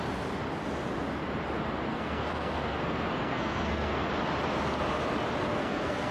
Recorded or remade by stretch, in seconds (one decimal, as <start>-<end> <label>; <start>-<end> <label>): 0.0-1.9 recorded; 1.9-4.1 remade; 4.1-5.5 recorded; 5.5-6.1 remade